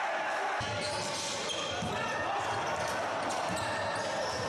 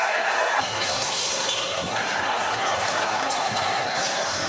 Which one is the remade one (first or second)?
second